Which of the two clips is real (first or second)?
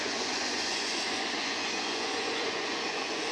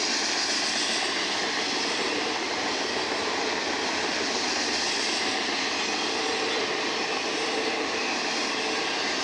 second